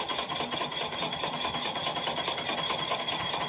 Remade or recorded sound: recorded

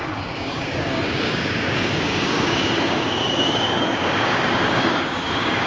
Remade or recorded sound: remade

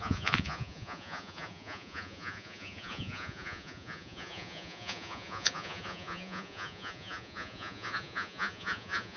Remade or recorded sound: remade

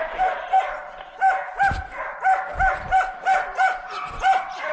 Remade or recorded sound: recorded